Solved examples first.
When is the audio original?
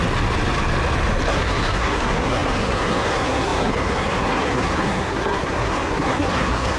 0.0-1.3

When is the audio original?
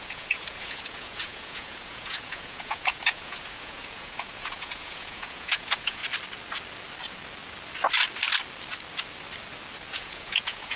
6.0-9.9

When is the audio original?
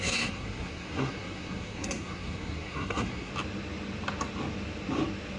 3.3-5.4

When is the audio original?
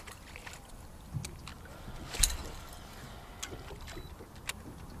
1.5-4.5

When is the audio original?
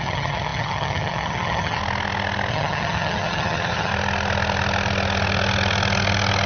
1.8-2.5; 3.9-6.5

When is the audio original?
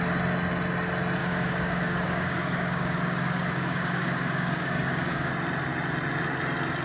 0.0-1.2; 5.3-6.8